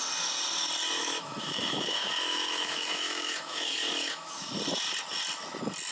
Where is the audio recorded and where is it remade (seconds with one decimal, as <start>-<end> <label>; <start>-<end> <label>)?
0.0-1.0 recorded; 1.0-4.5 remade; 4.5-5.9 recorded